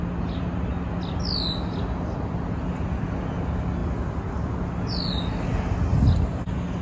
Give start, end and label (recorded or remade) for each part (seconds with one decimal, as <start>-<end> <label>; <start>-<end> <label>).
0.0-6.8 recorded